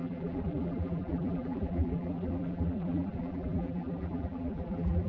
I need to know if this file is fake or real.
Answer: fake